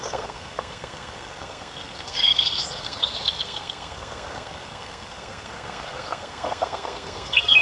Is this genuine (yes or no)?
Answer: no